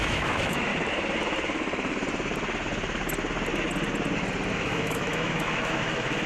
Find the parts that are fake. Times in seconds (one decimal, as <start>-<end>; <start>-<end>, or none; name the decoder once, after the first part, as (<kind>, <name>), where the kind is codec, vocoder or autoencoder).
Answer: 0.0-0.7 (autoencoder, DAC-VAE); 4.5-6.3